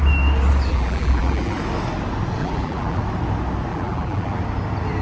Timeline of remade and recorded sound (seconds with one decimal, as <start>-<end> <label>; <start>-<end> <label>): 0.0-0.7 recorded; 0.7-1.6 remade; 1.6-2.4 recorded; 2.4-3.0 remade; 3.0-3.7 recorded; 3.7-4.4 remade; 4.4-5.0 recorded

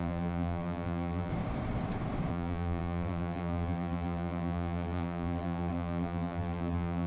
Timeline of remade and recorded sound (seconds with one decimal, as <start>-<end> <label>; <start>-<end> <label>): 0.0-1.3 remade; 1.3-2.3 recorded; 2.3-7.1 remade

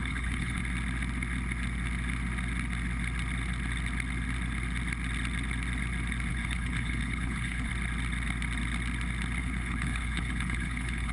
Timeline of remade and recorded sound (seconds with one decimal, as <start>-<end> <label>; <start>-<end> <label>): 0.0-0.6 remade; 0.6-6.3 recorded; 6.3-7.7 remade; 7.7-9.4 recorded; 9.4-11.1 remade

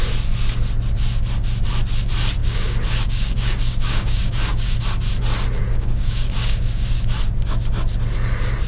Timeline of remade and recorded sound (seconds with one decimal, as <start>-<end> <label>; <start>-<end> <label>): 0.0-2.4 recorded; 2.4-4.8 remade; 4.8-5.6 recorded; 5.6-7.0 remade; 7.0-8.7 recorded

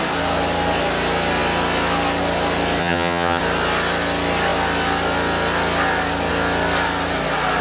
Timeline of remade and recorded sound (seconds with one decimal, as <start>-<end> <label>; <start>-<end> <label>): 0.0-2.8 recorded; 2.8-3.4 remade; 3.4-7.6 recorded

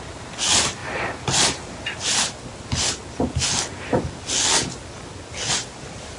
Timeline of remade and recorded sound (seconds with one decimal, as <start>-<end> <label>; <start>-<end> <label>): 0.0-6.2 recorded

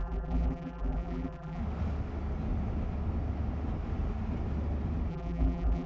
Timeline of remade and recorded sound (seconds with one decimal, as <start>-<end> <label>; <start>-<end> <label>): 0.0-1.6 remade; 1.6-5.1 recorded; 5.1-5.9 remade

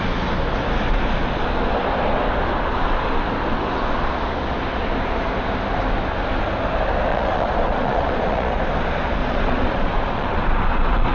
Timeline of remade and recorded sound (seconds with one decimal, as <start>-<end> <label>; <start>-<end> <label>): 0.0-7.1 recorded; 7.1-8.6 remade; 8.6-9.2 recorded; 9.2-11.1 remade